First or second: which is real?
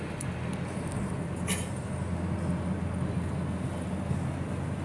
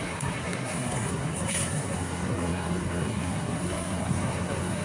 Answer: first